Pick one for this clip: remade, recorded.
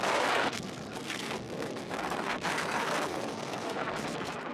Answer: remade